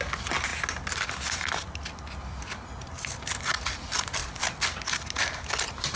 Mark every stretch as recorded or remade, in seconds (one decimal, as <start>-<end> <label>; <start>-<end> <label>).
0.0-6.0 recorded